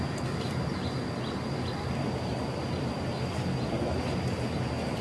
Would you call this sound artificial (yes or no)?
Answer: no